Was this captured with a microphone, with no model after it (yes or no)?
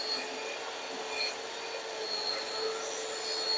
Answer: yes